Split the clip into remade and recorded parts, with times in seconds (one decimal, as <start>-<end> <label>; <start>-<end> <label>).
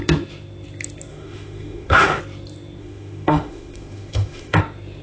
0.0-1.1 recorded; 1.1-2.2 remade; 2.2-2.8 recorded; 2.8-4.6 remade; 4.6-5.0 recorded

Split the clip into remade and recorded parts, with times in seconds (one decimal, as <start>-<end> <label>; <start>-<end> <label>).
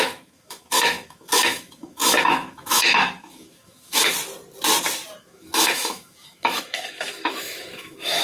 0.0-4.1 remade; 4.1-5.2 recorded; 5.2-8.2 remade